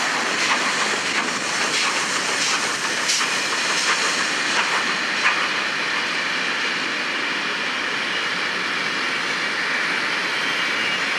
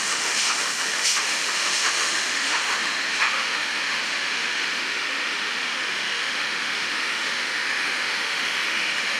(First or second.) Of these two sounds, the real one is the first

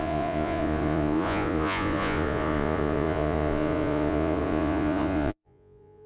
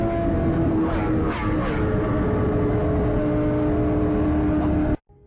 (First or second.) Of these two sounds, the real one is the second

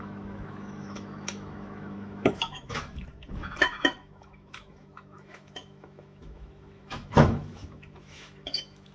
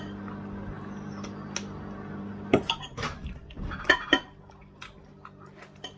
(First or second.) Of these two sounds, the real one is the second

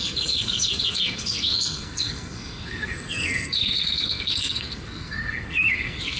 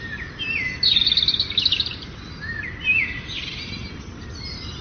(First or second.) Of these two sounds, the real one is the second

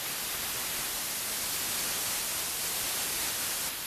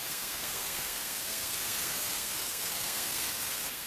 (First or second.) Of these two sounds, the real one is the first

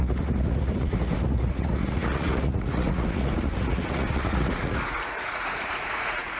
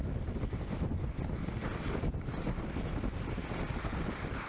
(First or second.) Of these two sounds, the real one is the second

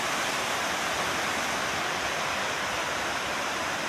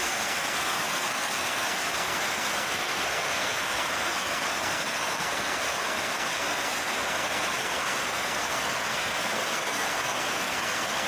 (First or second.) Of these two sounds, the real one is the first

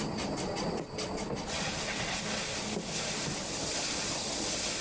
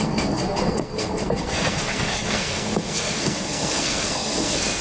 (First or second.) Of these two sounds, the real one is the first